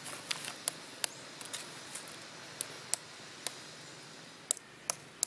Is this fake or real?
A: real